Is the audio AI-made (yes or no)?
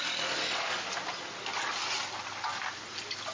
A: no